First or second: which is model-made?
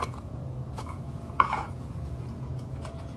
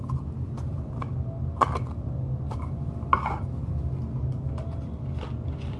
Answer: first